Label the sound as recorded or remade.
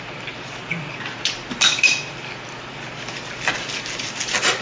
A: remade